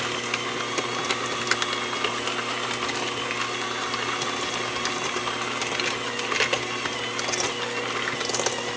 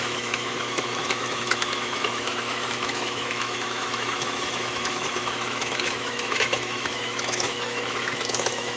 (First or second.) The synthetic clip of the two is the second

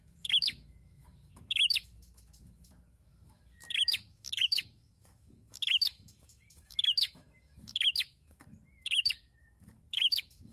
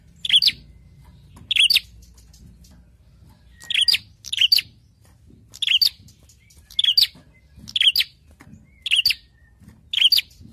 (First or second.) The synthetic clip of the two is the first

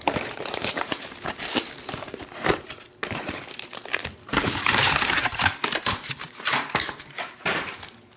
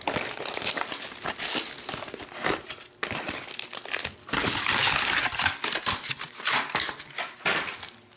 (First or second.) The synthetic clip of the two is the first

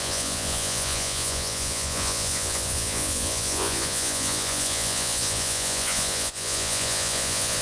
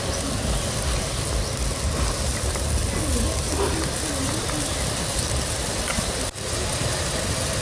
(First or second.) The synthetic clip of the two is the first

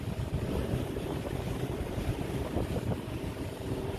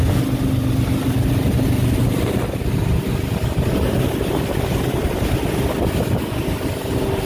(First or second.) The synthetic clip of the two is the first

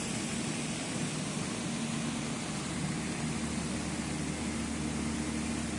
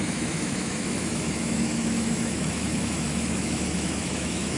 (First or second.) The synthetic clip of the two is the second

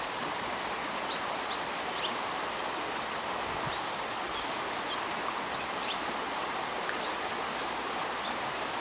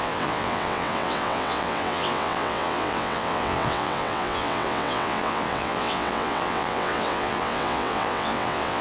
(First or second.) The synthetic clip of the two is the second